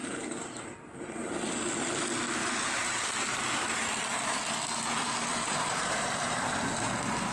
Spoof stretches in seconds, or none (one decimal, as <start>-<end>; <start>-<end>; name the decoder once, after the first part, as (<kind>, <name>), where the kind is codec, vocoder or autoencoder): 0.0-1.1 (vocoder, BigVGAN v2); 2.4-3.0; 5.3-6.6